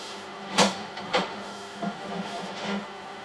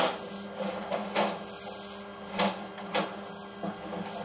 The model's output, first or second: first